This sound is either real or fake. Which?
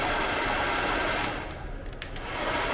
real